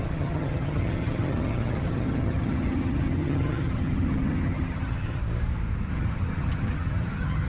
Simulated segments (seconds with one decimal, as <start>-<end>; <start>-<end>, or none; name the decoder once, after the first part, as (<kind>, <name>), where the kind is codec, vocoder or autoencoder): 0.0-5.2 (vocoder, HiFi-GAN); 5.9-7.5